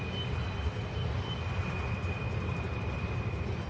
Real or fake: real